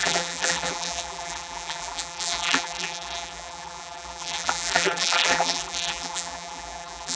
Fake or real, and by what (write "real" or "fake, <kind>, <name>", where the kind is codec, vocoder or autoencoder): fake, vocoder, BigVGAN v2